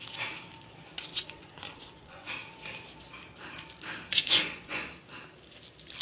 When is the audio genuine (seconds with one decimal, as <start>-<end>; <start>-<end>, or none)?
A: 0.0-1.1; 2.3-4.1; 4.9-6.0